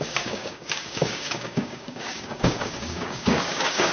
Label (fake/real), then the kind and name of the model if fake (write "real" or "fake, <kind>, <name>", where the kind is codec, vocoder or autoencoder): fake, codec, DAC